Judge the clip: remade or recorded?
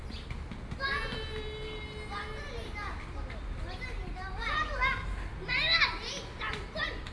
recorded